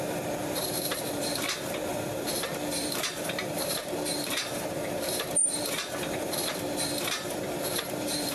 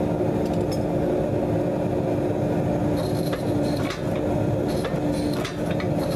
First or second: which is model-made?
first